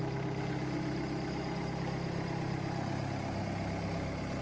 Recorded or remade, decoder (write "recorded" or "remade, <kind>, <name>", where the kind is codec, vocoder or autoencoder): recorded